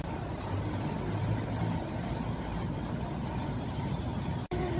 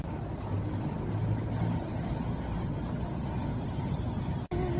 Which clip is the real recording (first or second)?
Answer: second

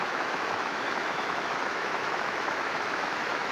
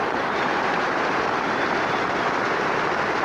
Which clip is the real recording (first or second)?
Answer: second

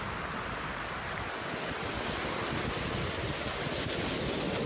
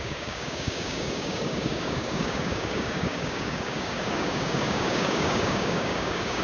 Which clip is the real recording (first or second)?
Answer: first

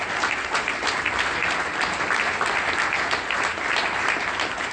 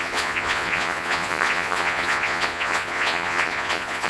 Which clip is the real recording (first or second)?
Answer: first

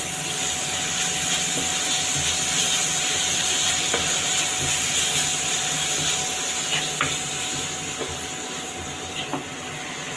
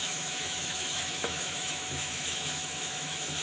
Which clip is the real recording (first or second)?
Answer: first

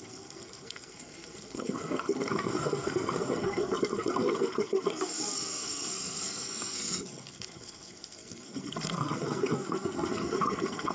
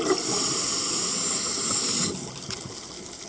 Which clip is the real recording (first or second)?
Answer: second